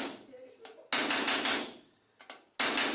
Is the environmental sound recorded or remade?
recorded